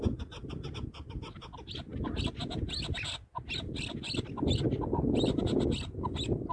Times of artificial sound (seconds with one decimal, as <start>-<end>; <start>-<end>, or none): none